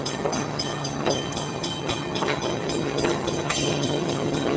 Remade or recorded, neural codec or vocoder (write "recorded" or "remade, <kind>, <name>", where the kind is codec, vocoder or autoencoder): remade, vocoder, HiFi-GAN